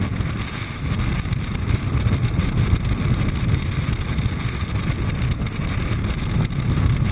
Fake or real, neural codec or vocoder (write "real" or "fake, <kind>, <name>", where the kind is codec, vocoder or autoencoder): real